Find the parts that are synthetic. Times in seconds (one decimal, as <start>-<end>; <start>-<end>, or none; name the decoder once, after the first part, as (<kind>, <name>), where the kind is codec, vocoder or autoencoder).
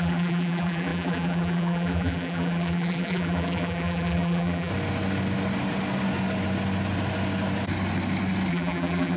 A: 0.0-4.7 (vocoder, BigVGAN v2); 8.5-9.2